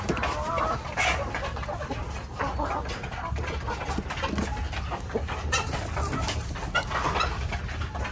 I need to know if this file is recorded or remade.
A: recorded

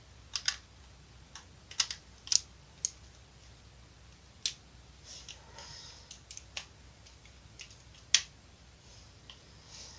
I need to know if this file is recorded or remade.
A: recorded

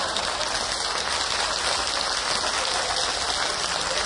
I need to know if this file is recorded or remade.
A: recorded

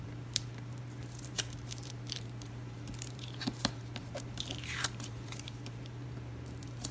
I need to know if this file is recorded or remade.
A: remade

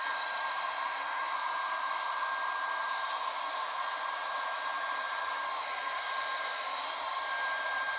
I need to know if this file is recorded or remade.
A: remade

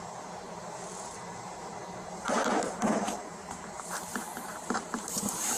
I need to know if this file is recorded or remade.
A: remade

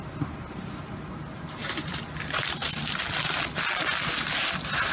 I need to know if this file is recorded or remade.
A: recorded